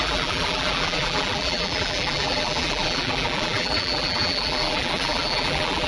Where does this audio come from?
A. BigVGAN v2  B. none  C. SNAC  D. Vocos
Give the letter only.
A